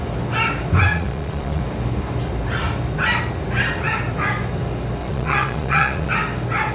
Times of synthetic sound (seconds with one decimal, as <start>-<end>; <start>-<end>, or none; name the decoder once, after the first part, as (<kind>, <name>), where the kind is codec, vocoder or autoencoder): 0.9-1.6 (vocoder, Vocos); 5.0-6.1